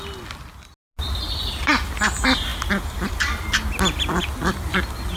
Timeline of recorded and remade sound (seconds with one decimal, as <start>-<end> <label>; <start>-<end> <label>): 0.0-5.2 recorded